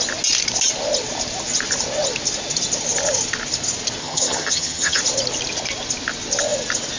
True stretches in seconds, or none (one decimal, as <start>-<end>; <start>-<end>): 0.0-4.0; 5.0-7.0